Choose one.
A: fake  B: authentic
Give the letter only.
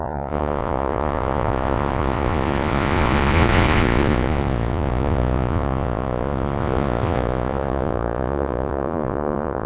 A